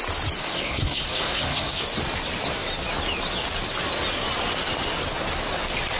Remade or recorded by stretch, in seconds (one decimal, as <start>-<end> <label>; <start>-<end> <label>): 0.0-0.4 recorded; 0.4-1.8 remade; 1.8-6.0 recorded